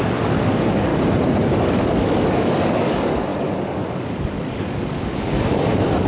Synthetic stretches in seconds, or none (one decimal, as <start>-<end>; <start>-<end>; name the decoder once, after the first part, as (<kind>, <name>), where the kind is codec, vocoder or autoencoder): 0.0-0.9 (codec, DAC); 1.4-6.1